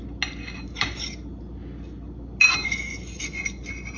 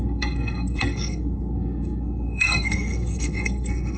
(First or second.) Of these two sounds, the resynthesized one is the second